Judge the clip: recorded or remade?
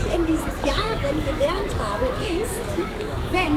remade